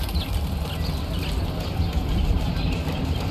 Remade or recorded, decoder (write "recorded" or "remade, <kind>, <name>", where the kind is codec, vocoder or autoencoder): recorded